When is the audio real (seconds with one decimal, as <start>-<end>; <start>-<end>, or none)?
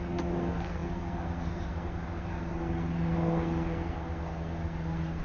none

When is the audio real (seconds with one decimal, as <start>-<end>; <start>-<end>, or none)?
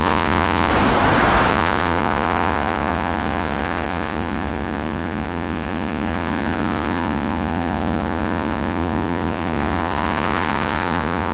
0.7-1.5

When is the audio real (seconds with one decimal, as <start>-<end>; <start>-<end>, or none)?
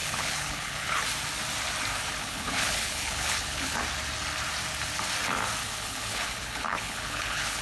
1.0-2.2; 3.8-5.6